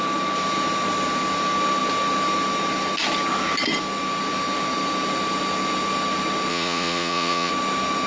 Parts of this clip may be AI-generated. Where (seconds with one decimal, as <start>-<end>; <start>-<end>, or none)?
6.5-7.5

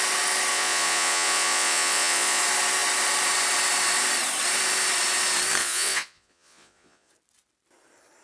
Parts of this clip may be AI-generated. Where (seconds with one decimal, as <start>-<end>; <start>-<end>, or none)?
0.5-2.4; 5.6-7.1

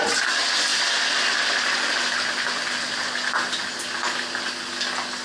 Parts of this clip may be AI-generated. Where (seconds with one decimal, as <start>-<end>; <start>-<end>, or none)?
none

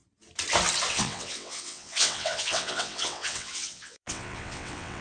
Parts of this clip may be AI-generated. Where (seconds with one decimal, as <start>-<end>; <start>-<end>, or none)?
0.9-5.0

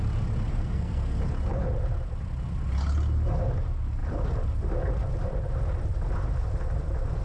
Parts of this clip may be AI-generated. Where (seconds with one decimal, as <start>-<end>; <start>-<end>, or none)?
0.5-1.2

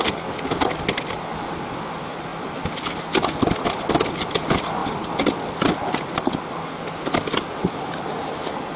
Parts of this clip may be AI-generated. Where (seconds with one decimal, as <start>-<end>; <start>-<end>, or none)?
none

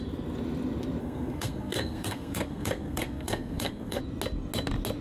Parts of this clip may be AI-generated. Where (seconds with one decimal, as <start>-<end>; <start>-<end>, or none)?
1.0-4.0

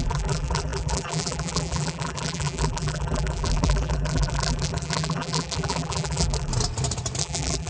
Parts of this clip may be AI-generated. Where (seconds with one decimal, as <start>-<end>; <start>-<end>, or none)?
0.0-6.5; 7.2-7.7